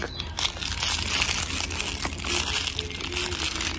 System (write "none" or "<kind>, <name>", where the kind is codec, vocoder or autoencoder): none